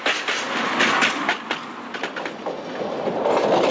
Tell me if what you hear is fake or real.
real